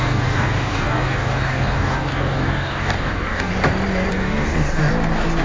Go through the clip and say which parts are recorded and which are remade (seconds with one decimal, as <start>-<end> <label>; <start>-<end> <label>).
0.0-3.5 remade; 3.5-4.1 recorded; 4.1-4.8 remade; 4.8-5.4 recorded